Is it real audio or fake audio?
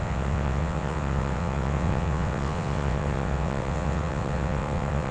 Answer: fake